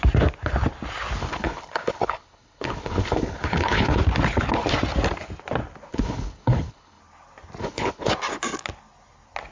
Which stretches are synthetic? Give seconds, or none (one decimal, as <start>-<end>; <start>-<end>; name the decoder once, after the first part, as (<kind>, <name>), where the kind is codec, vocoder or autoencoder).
1.2-4.0 (codec, HILCodec); 5.9-7.0; 7.6-8.1